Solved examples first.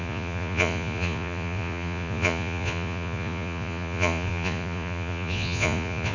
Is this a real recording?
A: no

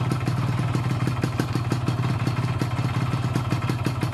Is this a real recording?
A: yes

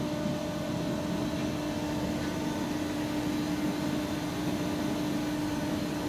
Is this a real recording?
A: yes